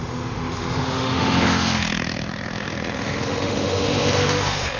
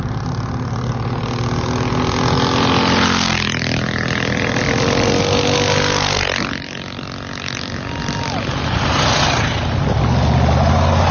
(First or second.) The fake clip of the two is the first